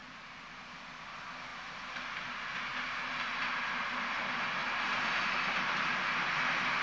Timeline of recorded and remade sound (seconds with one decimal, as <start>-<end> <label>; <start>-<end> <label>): 0.0-0.7 remade; 0.7-2.7 recorded; 2.7-3.4 remade; 3.4-4.6 recorded; 4.6-5.6 remade; 5.6-6.8 recorded